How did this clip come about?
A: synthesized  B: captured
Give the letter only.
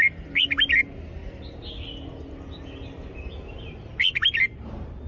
B